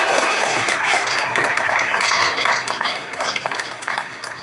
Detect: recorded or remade remade